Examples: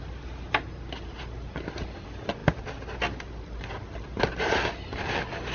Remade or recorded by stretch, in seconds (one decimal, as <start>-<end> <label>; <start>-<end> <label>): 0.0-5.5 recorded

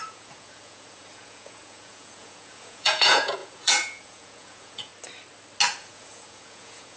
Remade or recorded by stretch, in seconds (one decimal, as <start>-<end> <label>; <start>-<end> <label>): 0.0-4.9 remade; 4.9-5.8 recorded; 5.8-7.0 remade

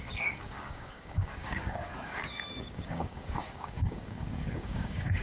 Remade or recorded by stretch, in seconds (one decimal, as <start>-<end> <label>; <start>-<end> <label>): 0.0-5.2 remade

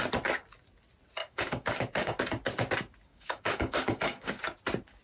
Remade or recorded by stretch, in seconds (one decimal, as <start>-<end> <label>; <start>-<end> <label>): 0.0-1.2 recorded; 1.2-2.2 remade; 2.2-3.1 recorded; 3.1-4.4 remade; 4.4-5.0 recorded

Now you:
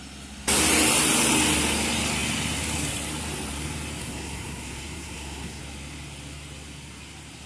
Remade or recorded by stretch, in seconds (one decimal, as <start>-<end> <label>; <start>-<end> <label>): 0.0-4.0 recorded; 4.0-5.6 remade; 5.6-7.5 recorded

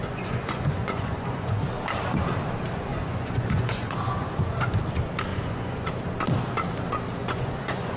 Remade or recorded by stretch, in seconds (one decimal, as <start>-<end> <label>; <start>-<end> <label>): 0.0-1.6 remade; 1.6-2.9 recorded; 2.9-4.8 remade; 4.8-5.3 recorded; 5.3-5.9 remade; 5.9-7.2 recorded; 7.2-8.0 remade